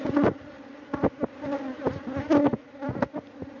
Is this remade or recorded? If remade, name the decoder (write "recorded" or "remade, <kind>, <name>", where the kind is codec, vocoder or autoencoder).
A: recorded